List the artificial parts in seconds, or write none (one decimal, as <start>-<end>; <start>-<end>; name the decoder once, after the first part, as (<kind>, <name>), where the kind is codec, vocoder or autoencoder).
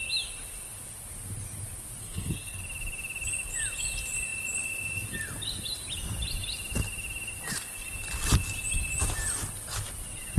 2.0-2.6 (codec, SNAC)